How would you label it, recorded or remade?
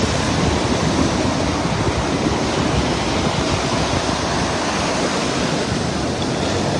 recorded